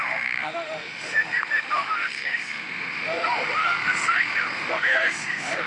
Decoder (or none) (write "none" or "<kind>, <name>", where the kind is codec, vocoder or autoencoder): autoencoder, DAC-VAE